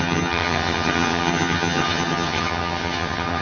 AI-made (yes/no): yes